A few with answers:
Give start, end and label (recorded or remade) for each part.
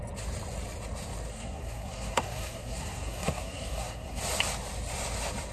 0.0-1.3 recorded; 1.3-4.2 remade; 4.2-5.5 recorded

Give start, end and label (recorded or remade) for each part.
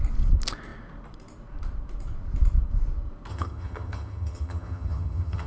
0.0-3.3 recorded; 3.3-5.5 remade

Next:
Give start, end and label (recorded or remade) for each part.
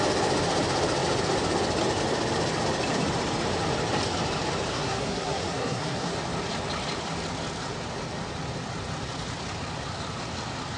0.0-4.7 recorded; 4.7-6.1 remade; 6.1-10.8 recorded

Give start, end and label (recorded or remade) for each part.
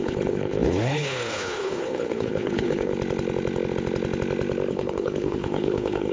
0.0-2.9 remade; 2.9-4.7 recorded; 4.7-6.1 remade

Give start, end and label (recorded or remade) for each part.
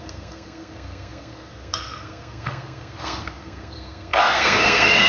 0.0-5.1 remade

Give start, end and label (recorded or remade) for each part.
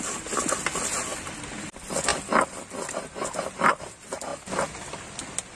0.0-5.6 recorded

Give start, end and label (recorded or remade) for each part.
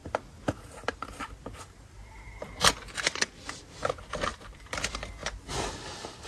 0.0-4.3 recorded; 4.3-4.8 remade; 4.8-6.3 recorded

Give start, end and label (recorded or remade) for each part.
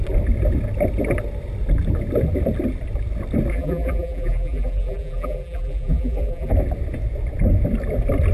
0.0-3.5 recorded; 3.5-6.5 remade; 6.5-8.3 recorded